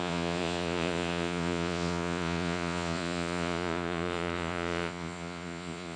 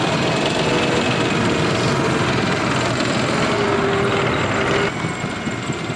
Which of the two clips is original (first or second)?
second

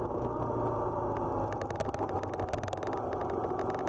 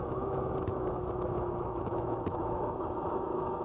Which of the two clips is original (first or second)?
first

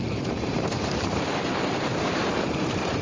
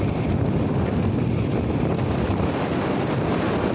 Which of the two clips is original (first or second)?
second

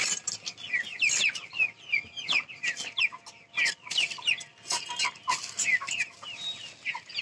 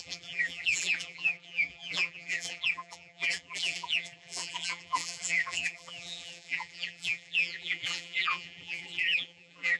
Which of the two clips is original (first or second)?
first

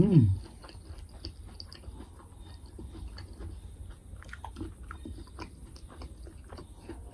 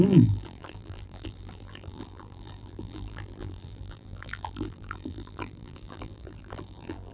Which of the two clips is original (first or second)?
first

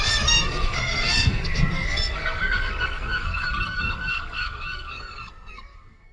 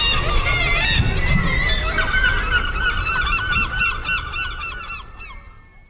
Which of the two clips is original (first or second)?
second